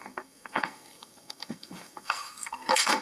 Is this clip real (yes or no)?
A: no